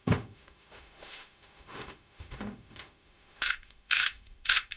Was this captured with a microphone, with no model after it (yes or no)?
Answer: no